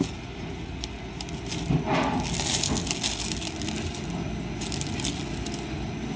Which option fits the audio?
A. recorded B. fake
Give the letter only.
A